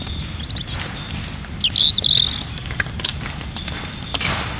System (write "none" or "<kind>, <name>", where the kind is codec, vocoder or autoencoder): none